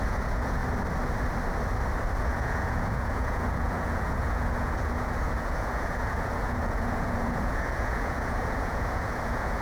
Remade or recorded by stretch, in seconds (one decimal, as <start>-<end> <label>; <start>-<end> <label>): 0.0-0.6 remade; 0.6-2.2 recorded; 2.2-9.6 remade